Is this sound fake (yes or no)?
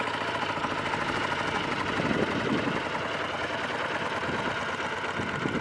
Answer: no